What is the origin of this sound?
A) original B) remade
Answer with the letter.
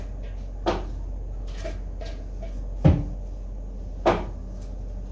A